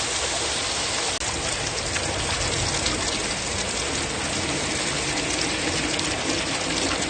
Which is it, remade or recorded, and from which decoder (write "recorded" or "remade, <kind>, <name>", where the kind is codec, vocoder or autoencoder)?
recorded